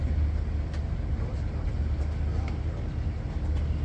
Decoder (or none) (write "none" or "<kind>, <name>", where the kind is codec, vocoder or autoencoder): none